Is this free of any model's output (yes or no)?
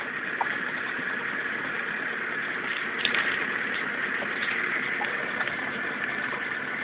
yes